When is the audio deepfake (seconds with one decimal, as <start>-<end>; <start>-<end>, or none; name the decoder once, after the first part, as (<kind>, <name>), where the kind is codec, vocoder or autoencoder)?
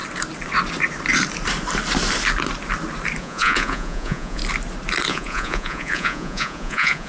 3.2-4.4 (vocoder, Vocos); 5.1-7.1